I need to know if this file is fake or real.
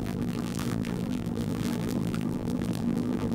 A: fake